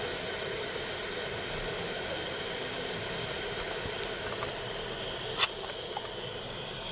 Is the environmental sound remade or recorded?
recorded